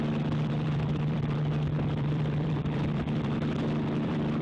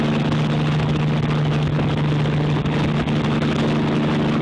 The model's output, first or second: first